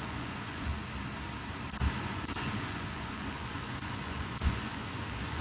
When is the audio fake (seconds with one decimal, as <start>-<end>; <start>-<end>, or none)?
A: 0.0-0.7; 2.0-5.4